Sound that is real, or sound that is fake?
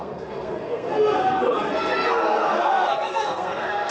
fake